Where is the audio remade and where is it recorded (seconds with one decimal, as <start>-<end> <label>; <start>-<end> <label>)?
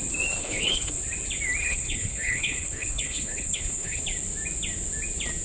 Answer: 0.0-0.4 recorded; 0.4-1.0 remade; 1.0-1.6 recorded; 1.6-4.0 remade; 4.0-5.4 recorded